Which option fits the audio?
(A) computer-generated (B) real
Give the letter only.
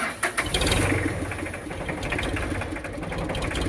B